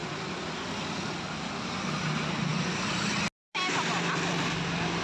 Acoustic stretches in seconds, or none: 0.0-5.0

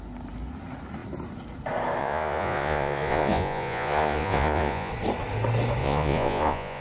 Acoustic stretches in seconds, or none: 0.0-2.0; 4.9-5.8

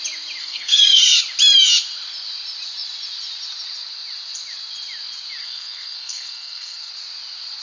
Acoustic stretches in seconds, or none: 0.0-0.4; 1.0-5.4; 6.9-7.6

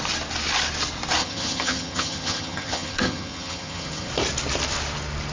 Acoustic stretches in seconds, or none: 0.0-1.2; 4.1-5.3

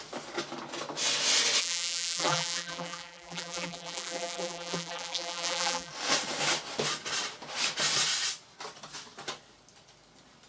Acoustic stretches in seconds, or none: 0.0-1.6; 5.9-10.5

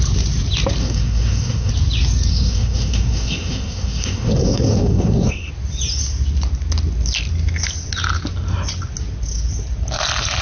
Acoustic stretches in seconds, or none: 0.0-0.8; 1.7-2.3; 5.5-10.4

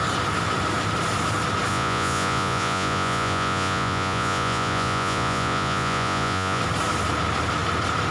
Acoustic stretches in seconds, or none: 0.0-1.7; 6.6-8.1